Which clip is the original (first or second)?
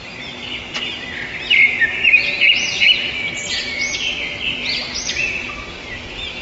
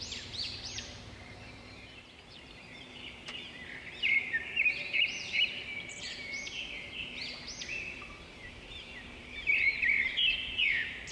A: first